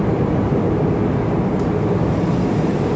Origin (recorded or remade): recorded